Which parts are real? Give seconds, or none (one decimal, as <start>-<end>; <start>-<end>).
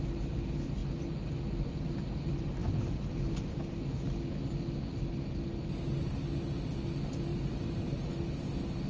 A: 0.0-2.6; 3.8-7.3; 8.1-8.9